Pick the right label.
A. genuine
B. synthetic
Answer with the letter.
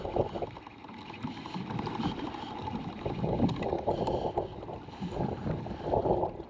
A